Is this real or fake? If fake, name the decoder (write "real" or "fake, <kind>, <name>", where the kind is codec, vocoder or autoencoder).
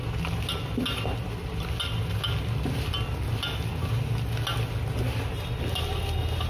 real